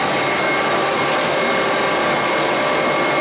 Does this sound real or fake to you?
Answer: real